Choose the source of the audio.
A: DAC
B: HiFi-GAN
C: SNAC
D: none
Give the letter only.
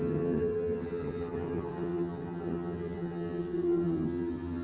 B